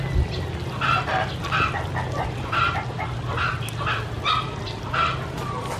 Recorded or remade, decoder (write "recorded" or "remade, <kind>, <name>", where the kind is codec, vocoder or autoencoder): recorded